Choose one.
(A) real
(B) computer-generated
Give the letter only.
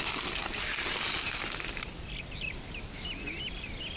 A